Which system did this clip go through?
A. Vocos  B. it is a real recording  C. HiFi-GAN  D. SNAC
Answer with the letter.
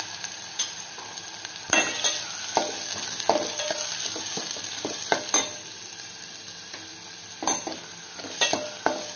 B